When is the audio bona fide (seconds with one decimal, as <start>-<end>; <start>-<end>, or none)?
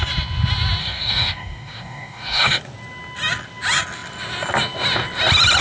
0.0-0.8; 2.6-5.6